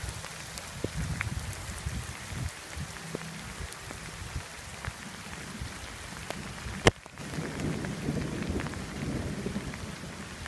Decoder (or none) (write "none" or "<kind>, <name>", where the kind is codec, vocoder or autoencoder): none